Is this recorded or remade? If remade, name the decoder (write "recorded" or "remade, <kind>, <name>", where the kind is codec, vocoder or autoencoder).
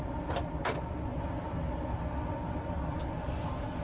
recorded